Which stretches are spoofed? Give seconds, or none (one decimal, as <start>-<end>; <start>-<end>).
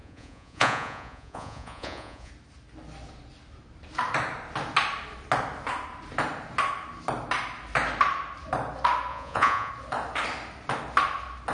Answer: 0.0-2.3; 9.1-9.7